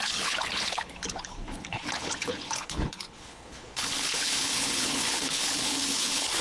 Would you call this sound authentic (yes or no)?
no